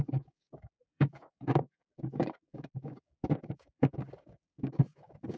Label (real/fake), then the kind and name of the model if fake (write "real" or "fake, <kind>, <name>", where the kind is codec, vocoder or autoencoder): fake, codec, DAC